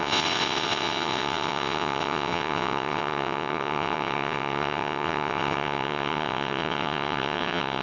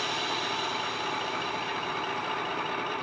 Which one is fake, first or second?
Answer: first